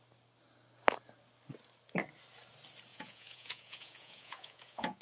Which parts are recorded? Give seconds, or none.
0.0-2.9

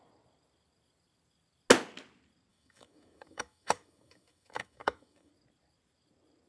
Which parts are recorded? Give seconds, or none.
0.0-2.5; 5.3-6.5